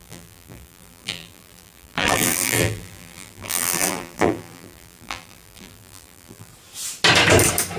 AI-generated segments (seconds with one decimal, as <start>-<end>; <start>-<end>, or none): 0.0-6.5